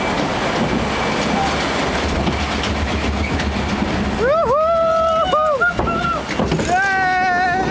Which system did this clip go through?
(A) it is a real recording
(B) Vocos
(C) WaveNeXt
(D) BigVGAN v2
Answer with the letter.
A